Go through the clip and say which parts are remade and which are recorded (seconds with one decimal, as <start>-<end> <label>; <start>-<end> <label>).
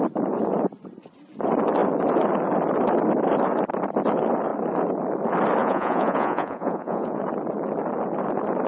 0.0-5.6 recorded; 5.6-7.2 remade; 7.2-8.7 recorded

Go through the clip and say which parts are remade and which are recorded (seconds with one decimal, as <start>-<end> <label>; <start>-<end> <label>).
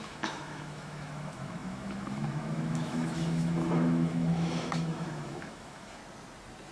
0.0-6.0 remade; 6.0-6.7 recorded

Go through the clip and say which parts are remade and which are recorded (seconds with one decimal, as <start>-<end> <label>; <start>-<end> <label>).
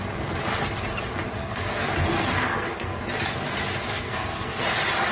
0.0-1.4 recorded; 1.4-1.9 remade; 1.9-2.3 recorded; 2.3-3.0 remade; 3.0-3.9 recorded; 3.9-4.6 remade; 4.6-5.1 recorded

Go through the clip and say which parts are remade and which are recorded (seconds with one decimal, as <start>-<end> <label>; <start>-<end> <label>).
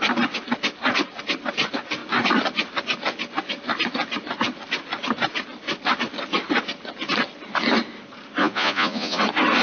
0.0-8.4 recorded; 8.4-9.2 remade; 9.2-9.6 recorded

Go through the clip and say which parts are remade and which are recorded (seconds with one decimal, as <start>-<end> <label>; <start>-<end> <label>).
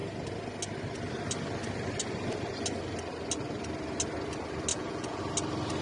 0.0-4.7 recorded; 4.7-5.2 remade; 5.2-5.8 recorded